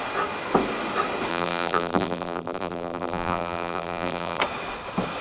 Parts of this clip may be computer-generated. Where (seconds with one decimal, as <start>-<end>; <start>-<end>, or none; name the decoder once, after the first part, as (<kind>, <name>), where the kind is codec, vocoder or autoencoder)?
1.3-4.4 (vocoder, BigVGAN v2)

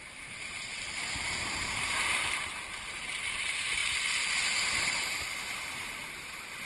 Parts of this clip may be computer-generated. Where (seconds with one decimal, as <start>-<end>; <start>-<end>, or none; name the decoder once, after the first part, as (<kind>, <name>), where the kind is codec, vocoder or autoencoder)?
0.0-2.2 (vocoder, BigVGAN v2); 2.8-3.8; 4.9-6.7

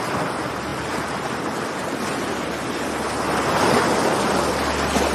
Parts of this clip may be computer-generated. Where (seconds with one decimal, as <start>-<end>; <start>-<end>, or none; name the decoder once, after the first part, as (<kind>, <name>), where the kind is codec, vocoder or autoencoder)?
none

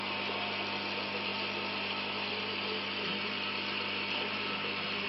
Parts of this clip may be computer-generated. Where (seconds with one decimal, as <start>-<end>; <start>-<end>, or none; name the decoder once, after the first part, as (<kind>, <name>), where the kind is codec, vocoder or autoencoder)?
none